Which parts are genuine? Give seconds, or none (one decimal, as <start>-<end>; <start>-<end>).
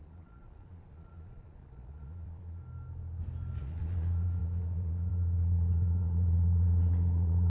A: 2.6-3.6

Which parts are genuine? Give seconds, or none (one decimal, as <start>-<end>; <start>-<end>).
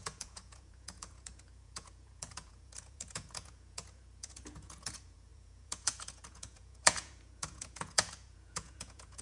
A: none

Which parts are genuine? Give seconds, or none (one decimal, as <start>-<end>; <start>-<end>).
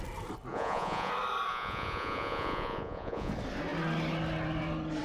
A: 0.0-0.5; 1.1-1.5; 3.3-5.0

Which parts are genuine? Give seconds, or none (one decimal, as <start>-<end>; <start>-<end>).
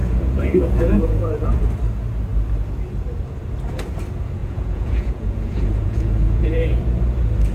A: 1.6-4.4; 6.8-7.5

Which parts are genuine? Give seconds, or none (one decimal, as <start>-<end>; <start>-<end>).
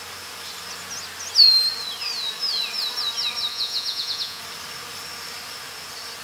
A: 0.0-3.5; 4.4-6.2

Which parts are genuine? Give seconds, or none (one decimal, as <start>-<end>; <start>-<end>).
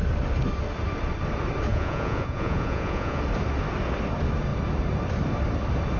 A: 0.0-1.7; 3.2-6.0